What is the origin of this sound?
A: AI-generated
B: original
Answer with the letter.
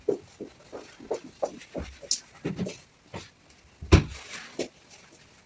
B